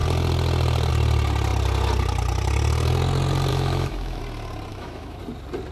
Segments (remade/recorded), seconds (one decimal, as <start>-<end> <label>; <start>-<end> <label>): 0.0-3.5 recorded; 3.5-4.2 remade; 4.2-4.7 recorded; 4.7-5.2 remade; 5.2-5.7 recorded